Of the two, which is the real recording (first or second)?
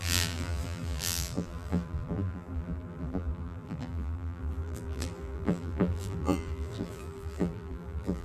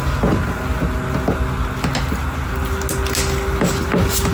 second